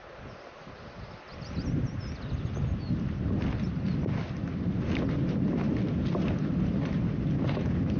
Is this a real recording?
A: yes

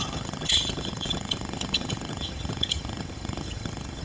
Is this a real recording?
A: no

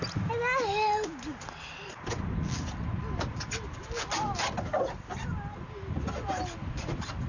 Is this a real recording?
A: yes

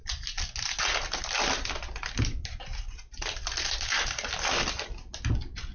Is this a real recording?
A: yes